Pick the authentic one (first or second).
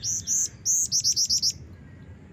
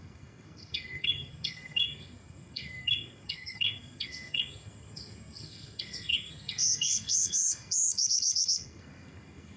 first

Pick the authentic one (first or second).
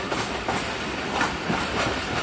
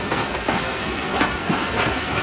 first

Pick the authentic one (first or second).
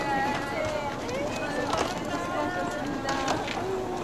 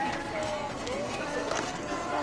first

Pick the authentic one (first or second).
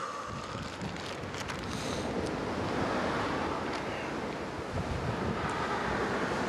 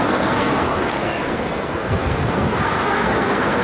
first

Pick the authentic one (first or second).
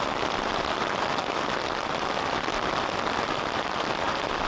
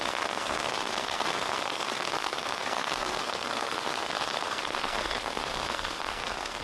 first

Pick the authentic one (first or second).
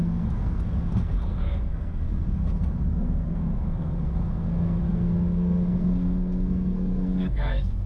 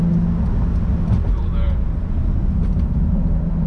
second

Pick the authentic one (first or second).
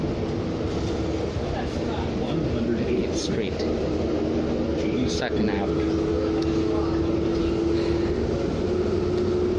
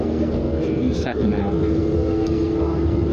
first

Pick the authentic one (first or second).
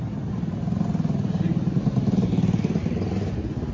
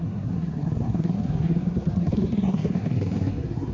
first